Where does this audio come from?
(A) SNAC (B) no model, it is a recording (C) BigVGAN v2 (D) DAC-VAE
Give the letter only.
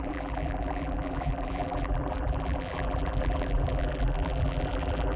C